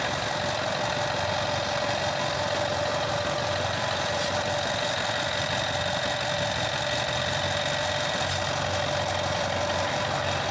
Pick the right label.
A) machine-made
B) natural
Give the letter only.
B